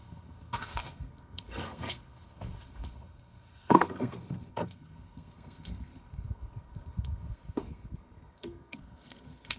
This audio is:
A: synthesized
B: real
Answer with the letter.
A